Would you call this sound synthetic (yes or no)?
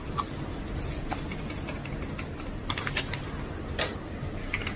no